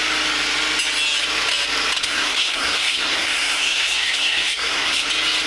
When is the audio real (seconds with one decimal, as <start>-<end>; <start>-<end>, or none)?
0.0-2.0; 5.1-5.5